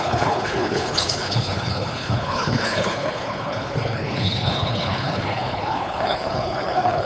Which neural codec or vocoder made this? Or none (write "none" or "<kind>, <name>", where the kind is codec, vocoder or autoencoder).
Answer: codec, HILCodec